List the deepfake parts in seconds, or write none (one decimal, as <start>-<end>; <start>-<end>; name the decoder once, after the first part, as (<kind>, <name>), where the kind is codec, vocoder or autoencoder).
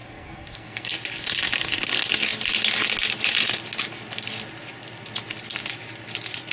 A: 0.0-0.9 (codec, SNAC)